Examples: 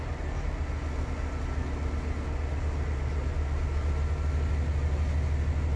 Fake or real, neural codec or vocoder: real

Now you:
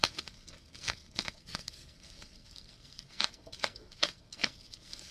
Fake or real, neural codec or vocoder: fake, codec, SNAC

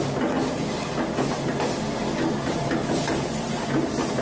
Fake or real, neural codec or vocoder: real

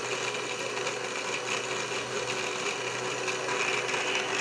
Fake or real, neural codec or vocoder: real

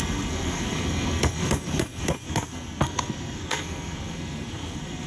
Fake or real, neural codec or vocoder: fake, codec, SNAC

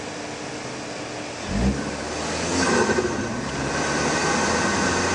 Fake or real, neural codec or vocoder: real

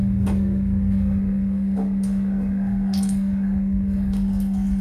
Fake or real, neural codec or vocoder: fake, codec, SNAC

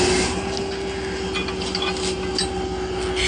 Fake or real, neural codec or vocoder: real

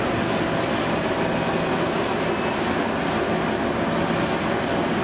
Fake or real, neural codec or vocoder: real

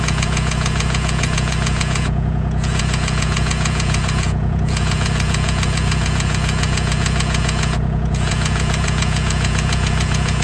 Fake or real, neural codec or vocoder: fake, vocoder, Vocos